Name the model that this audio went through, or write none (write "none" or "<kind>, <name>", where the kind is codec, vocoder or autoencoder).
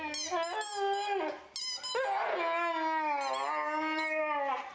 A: none